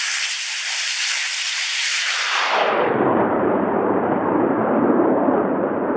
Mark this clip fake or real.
fake